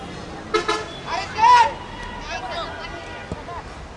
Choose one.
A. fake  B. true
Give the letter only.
B